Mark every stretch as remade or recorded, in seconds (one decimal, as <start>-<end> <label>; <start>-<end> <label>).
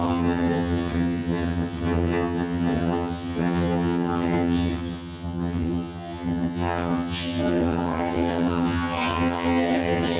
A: 0.0-10.2 remade